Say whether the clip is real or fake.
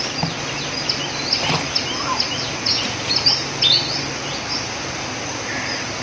real